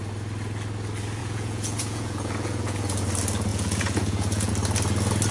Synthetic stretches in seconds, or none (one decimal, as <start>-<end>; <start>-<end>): 1.2-3.0; 3.5-4.5